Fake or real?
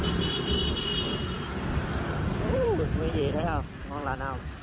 fake